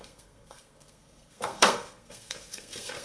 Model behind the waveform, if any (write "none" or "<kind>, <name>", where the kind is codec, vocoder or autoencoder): codec, SNAC